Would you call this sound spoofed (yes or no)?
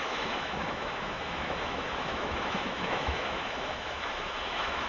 yes